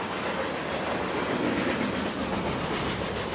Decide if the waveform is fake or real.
real